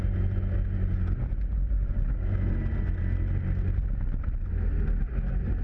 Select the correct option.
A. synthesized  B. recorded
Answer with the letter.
B